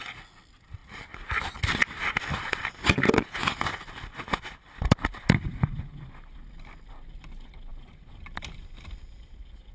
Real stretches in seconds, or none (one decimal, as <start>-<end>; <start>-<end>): 0.0-0.8; 1.6-3.4; 5.8-9.7